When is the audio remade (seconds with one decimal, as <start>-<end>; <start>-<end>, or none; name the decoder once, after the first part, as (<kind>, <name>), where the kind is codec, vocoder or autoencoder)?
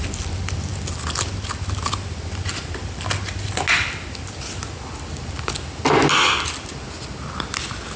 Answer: none